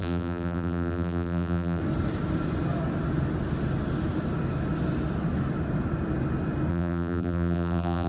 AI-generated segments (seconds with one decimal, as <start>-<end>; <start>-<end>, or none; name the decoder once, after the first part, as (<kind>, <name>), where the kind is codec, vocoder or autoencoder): 0.0-1.8 (vocoder, BigVGAN v2); 6.7-8.1